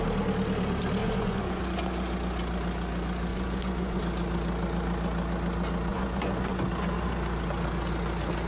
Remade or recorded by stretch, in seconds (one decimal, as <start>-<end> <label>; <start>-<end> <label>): 0.0-1.0 recorded; 1.0-1.6 remade; 1.6-3.3 recorded; 3.3-4.0 remade; 4.0-5.9 recorded; 5.9-6.7 remade; 6.7-8.5 recorded